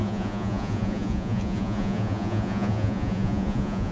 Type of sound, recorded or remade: remade